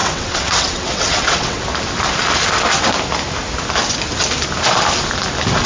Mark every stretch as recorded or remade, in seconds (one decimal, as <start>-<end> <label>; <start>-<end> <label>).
0.0-1.6 remade; 1.6-5.7 recorded